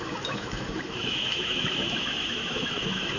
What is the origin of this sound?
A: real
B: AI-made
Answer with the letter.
B